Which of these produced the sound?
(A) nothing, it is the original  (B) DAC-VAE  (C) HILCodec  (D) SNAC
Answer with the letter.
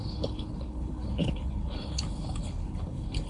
C